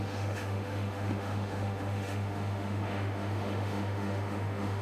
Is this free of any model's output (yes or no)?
no